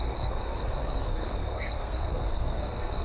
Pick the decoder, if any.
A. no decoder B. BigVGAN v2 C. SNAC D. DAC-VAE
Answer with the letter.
C